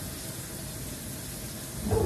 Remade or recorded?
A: recorded